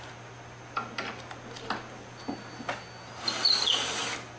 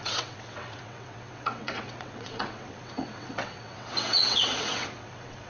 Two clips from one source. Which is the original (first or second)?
first